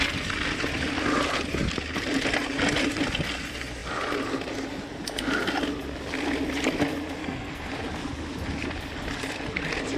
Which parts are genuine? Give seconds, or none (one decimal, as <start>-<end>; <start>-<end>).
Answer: 0.0-7.2; 7.7-10.0